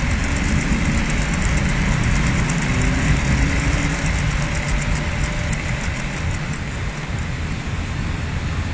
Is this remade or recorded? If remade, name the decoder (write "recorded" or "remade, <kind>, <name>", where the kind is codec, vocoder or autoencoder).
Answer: recorded